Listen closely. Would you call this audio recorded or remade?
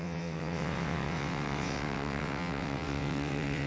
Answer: remade